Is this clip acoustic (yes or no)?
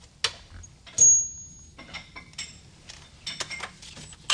yes